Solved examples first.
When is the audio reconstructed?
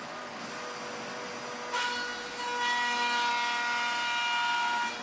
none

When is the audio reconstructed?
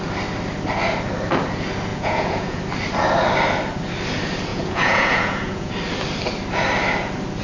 1.9-2.6 (vocoder, Vocos); 4.5-5.7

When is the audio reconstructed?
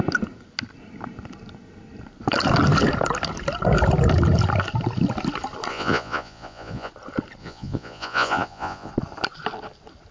5.7-6.9 (vocoder, Vocos); 7.4-8.9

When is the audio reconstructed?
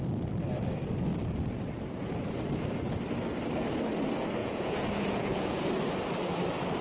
4.4-5.7 (vocoder, Vocos)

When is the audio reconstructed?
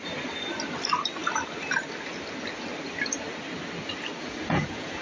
4.2-5.0 (vocoder, Vocos)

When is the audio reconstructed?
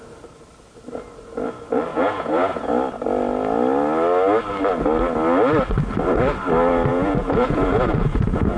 1.9-2.7 (vocoder, Vocos); 6.9-8.6